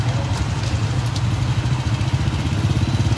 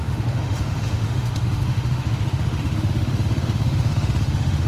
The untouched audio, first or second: first